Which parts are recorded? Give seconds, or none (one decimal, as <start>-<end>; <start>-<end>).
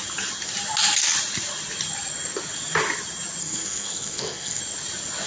0.0-3.4; 4.6-5.3